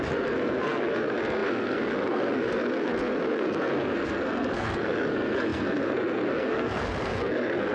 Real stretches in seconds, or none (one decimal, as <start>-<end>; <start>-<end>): none